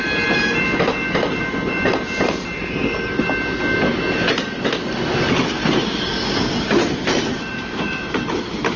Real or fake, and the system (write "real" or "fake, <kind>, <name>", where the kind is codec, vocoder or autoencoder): real